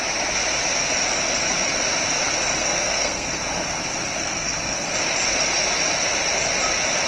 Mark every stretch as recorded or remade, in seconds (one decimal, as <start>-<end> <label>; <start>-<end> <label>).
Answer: 0.0-2.6 recorded; 2.6-3.4 remade; 3.4-4.2 recorded; 4.2-4.9 remade; 4.9-7.1 recorded